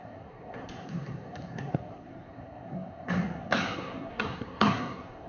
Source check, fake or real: fake